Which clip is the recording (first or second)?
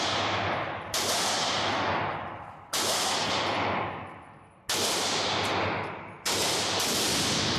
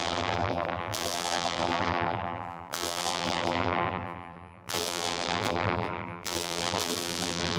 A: first